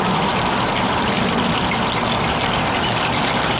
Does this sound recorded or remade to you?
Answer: recorded